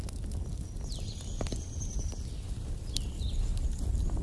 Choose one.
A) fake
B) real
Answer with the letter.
B